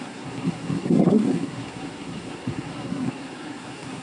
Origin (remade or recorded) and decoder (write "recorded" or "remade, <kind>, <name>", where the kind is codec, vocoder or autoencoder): remade, codec, SNAC